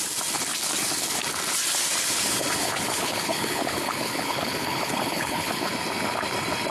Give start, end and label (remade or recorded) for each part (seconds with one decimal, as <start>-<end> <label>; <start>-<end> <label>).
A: 0.0-2.6 recorded; 2.6-5.7 remade; 5.7-6.7 recorded

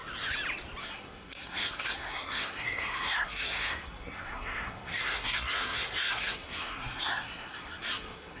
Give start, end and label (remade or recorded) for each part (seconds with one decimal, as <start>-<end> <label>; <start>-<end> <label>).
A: 0.0-0.8 recorded; 0.8-8.4 remade

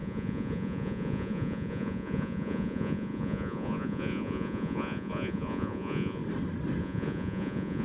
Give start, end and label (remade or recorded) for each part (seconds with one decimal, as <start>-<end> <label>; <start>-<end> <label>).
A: 0.0-6.2 remade; 6.2-6.8 recorded; 6.8-7.8 remade

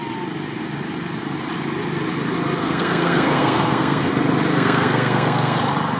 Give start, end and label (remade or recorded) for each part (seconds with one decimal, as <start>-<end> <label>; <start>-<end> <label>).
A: 0.0-2.6 recorded; 2.6-4.1 remade; 4.1-4.5 recorded; 4.5-5.6 remade; 5.6-6.0 recorded

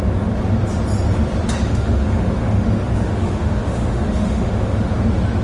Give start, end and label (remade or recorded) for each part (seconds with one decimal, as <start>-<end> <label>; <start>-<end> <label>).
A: 0.0-1.7 recorded; 1.7-4.9 remade; 4.9-5.4 recorded